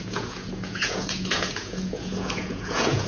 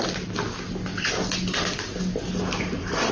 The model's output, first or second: first